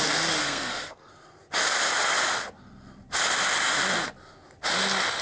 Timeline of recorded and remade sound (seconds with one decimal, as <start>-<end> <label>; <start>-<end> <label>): 0.0-0.4 recorded; 0.4-1.1 remade; 1.1-5.2 recorded